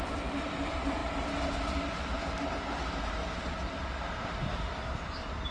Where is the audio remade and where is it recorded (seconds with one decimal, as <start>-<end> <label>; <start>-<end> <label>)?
0.0-5.5 recorded